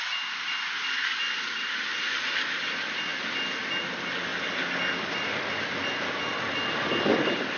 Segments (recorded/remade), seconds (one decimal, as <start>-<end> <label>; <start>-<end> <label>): 0.0-7.6 recorded